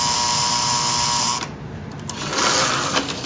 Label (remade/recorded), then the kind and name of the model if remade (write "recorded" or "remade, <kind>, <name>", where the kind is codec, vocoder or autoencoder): recorded